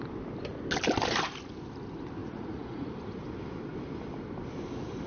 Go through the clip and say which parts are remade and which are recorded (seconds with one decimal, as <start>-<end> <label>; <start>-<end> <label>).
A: 0.0-2.2 recorded; 2.2-2.9 remade; 2.9-5.1 recorded